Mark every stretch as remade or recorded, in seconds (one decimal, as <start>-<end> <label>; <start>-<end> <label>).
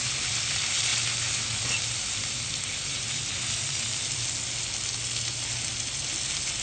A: 0.0-6.6 recorded